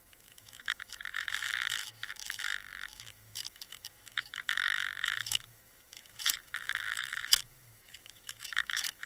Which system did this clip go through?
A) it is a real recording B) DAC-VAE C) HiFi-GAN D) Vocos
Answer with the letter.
B